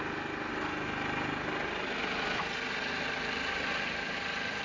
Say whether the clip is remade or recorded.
recorded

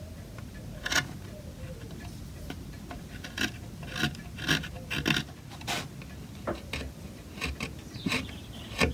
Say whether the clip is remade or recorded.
recorded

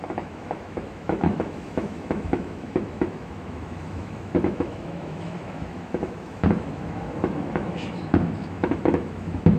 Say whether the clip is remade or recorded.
remade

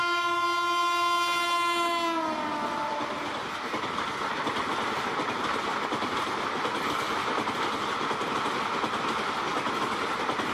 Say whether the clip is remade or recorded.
recorded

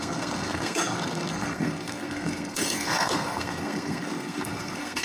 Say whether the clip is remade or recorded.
remade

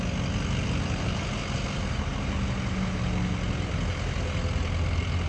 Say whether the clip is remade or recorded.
recorded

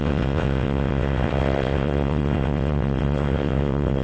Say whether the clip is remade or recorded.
remade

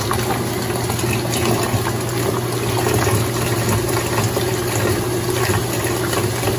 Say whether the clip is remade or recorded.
recorded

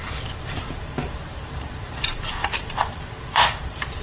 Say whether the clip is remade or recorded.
remade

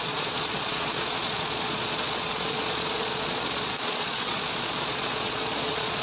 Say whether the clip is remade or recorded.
remade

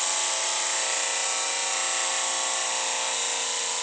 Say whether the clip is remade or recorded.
recorded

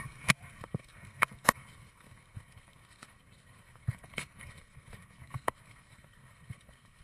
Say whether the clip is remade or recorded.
remade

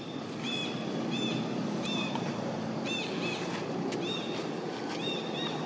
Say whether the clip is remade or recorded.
recorded